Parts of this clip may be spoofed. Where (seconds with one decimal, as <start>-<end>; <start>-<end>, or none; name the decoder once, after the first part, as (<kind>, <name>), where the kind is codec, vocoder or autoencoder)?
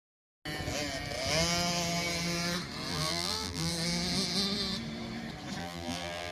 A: 2.9-3.7 (vocoder, BigVGAN v2); 5.6-6.3